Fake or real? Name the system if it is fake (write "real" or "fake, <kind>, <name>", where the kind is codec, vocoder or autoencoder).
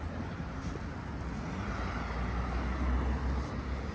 real